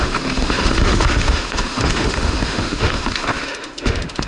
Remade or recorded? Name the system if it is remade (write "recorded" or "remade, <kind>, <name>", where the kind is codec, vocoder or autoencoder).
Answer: remade, autoencoder, DAC-VAE